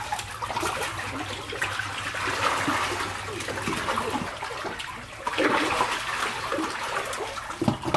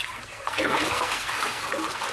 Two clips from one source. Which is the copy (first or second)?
second